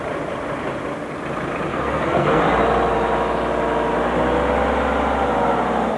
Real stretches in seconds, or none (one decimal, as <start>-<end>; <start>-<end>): 0.0-1.7; 2.4-6.0